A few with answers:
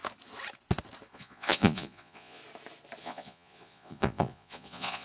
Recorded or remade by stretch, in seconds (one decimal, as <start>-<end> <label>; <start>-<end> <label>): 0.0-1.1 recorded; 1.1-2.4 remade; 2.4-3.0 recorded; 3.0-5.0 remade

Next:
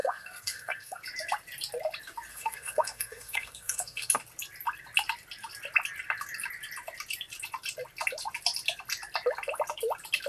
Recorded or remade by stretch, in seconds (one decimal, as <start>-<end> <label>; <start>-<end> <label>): 0.0-1.0 remade; 1.0-2.3 recorded; 2.3-4.1 remade; 4.1-10.3 recorded

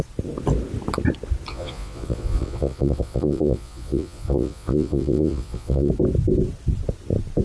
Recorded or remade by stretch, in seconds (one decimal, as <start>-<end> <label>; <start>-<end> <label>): 0.0-1.5 recorded; 1.5-5.9 remade; 5.9-7.4 recorded

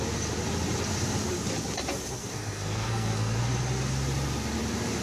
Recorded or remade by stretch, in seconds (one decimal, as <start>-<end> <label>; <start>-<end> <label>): 0.0-2.2 recorded; 2.2-3.4 remade; 3.4-5.0 recorded